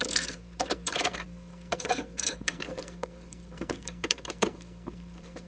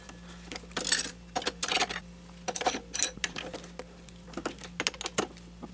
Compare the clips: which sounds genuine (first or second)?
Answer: second